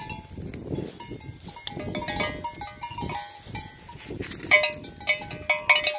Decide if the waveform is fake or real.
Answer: real